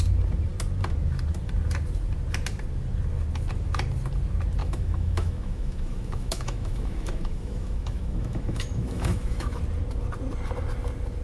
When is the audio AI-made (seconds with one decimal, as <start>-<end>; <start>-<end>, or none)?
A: 4.6-9.6

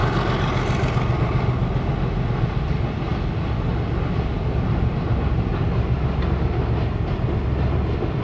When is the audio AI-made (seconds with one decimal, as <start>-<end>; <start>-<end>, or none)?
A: none